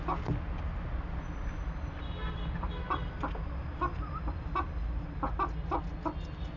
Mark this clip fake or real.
real